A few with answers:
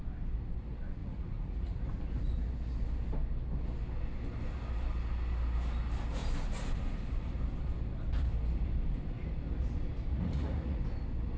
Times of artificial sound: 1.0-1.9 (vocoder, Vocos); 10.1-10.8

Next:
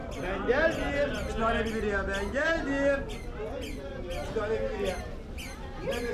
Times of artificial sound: none

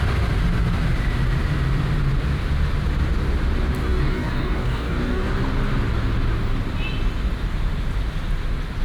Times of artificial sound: 3.8-5.3 (codec, DAC)

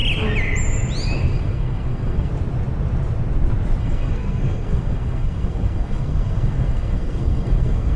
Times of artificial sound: 1.2-2.3 (codec, SNAC); 3.8-8.0

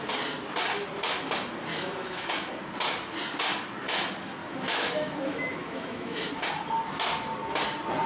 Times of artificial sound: 1.7-2.5 (autoencoder, DAC-VAE); 4.4-6.3

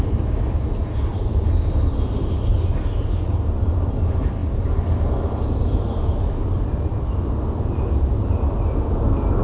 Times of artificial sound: none

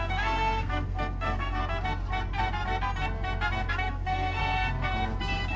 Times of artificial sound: 0.0-1.6 (codec, SNAC); 3.7-4.4